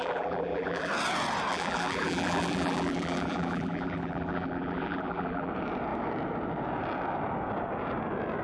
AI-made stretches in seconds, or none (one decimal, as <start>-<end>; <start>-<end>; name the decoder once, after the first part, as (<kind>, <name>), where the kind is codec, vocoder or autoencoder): 0.0-0.9 (vocoder, BigVGAN v2); 1.5-5.5